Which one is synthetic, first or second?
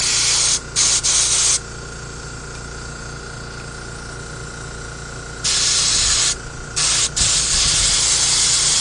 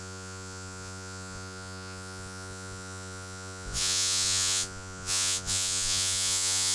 second